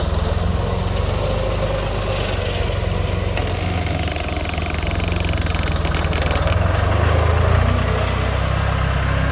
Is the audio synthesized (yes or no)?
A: no